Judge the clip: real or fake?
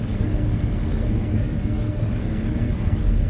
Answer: fake